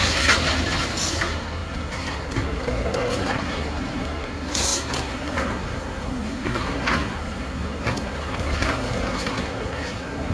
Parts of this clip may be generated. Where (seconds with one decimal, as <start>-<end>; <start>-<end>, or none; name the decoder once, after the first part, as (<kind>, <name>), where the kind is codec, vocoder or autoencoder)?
0.0-0.4 (codec, SNAC); 1.1-10.3